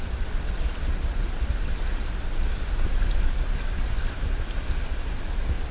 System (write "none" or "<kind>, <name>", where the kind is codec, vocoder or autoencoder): none